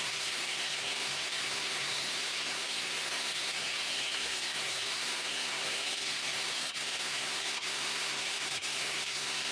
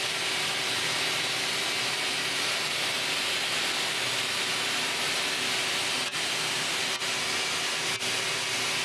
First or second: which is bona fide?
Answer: second